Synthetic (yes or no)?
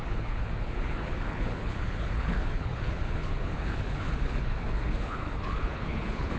yes